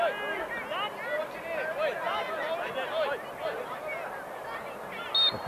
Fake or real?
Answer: real